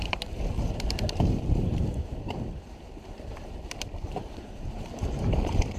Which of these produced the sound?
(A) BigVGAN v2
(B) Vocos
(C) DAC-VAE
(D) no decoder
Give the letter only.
A